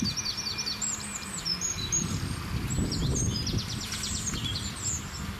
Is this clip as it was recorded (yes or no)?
no